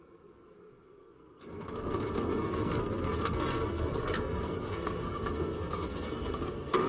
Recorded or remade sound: remade